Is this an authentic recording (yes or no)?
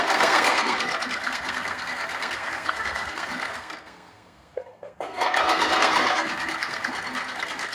no